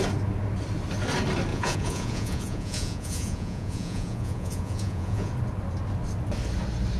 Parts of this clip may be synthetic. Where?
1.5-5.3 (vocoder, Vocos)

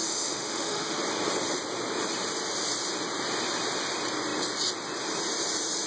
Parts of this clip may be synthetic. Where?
0.0-1.0 (autoencoder, DAC-VAE)

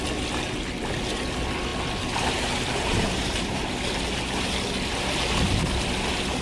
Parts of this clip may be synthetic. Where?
2.9-3.6 (vocoder, BigVGAN v2)

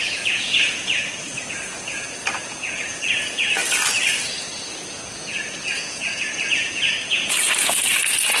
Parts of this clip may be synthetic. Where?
0.0-3.6 (vocoder, Vocos); 4.9-8.4